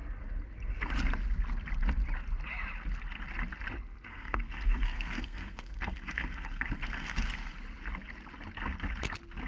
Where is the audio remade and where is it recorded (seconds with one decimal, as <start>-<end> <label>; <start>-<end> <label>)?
0.0-4.1 recorded; 4.1-7.5 remade; 7.5-9.5 recorded